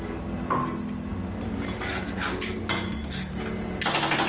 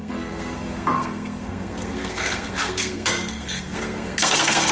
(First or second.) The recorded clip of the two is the first